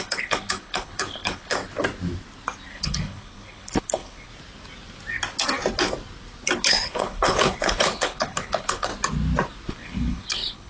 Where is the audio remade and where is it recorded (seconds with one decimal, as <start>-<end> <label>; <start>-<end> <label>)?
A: 0.0-1.6 remade; 1.6-2.7 recorded; 2.7-4.3 remade; 4.3-6.7 recorded; 6.7-8.9 remade; 8.9-9.7 recorded; 9.7-10.7 remade